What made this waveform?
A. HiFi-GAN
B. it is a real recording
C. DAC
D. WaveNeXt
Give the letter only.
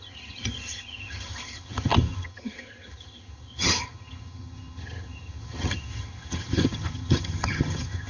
A